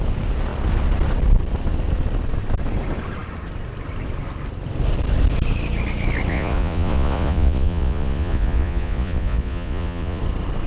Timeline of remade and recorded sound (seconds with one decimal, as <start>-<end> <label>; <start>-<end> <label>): 0.0-6.3 recorded; 6.3-10.2 remade; 10.2-10.7 recorded